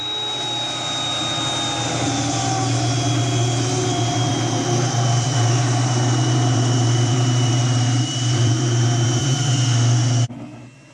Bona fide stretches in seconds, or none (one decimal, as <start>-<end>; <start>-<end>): 0.0-4.3; 9.4-10.9